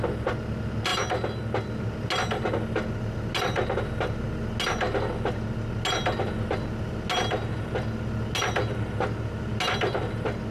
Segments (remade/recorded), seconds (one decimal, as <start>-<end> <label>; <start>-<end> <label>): 0.0-10.5 recorded